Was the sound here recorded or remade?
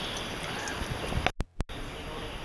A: recorded